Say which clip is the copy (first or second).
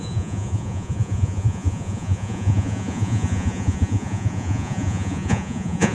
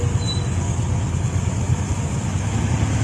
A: first